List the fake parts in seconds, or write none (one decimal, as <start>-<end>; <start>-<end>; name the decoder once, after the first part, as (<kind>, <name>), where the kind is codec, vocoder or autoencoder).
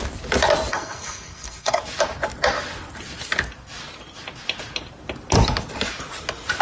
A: 0.7-1.8 (codec, SNAC)